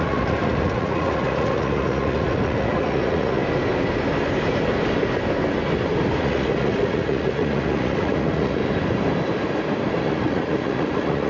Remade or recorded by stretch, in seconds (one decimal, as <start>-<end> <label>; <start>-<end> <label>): 0.0-3.4 remade; 3.4-6.2 recorded; 6.2-8.6 remade; 8.6-10.0 recorded; 10.0-11.3 remade